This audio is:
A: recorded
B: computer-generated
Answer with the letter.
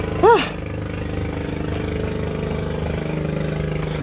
A